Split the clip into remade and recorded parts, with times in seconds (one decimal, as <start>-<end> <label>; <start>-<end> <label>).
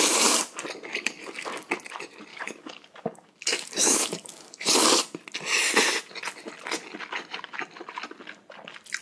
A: 0.0-0.9 recorded; 0.9-1.7 remade; 1.7-2.3 recorded; 2.3-5.0 remade; 5.0-9.0 recorded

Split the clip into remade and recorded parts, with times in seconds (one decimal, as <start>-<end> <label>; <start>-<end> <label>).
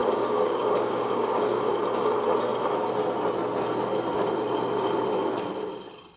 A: 0.0-1.7 remade; 1.7-6.2 recorded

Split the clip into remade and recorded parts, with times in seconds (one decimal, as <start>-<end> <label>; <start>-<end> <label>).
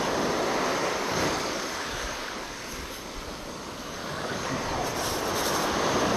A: 0.0-0.8 recorded; 0.8-4.5 remade; 4.5-6.2 recorded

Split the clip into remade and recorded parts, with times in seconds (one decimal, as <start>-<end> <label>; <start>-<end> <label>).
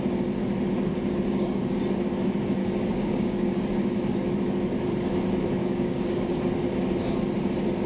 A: 0.0-0.9 recorded; 0.9-1.8 remade; 1.8-2.6 recorded; 2.6-3.9 remade; 3.9-5.6 recorded; 5.6-6.4 remade; 6.4-7.9 recorded